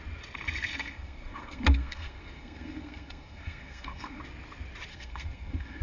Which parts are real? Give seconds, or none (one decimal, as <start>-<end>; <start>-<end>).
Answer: 0.0-0.7; 4.2-4.9